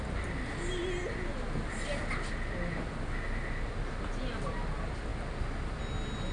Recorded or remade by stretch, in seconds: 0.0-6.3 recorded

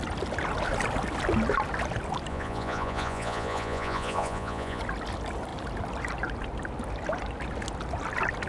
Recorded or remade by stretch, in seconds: 0.0-2.3 recorded; 2.3-4.8 remade; 4.8-8.5 recorded

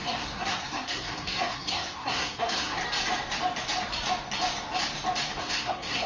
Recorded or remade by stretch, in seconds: 0.0-2.8 remade; 2.8-5.4 recorded; 5.4-6.1 remade

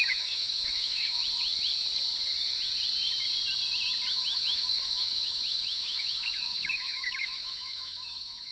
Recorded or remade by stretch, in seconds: 0.0-1.2 remade; 1.2-4.1 recorded; 4.1-8.5 remade

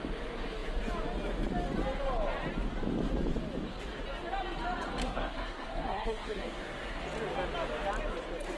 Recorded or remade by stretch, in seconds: 0.0-5.0 recorded; 5.0-7.0 remade; 7.0-8.6 recorded